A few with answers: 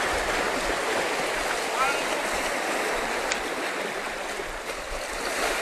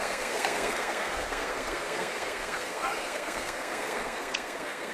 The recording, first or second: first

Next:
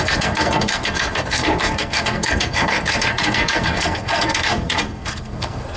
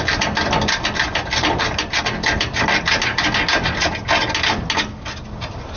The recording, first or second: second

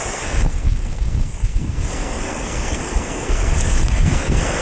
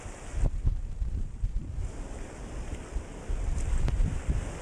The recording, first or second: second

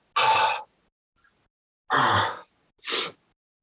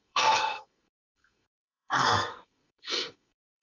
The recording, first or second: first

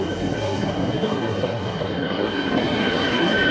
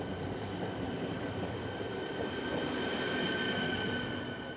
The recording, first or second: second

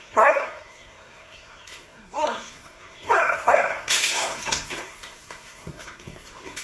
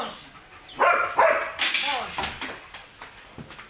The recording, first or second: second